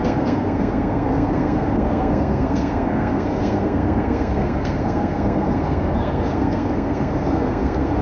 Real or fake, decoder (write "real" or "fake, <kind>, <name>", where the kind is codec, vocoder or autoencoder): fake, codec, SNAC